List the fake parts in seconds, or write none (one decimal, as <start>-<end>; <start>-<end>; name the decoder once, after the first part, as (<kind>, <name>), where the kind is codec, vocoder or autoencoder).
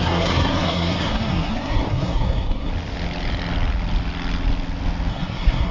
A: 0.0-2.7 (codec, SNAC); 5.1-5.7